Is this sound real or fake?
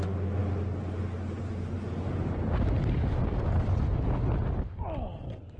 real